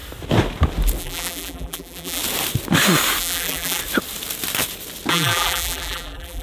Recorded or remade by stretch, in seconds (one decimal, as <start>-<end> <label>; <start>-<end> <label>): 0.0-1.0 recorded; 1.0-2.2 remade; 2.2-3.2 recorded; 3.2-3.8 remade; 3.8-5.1 recorded; 5.1-6.4 remade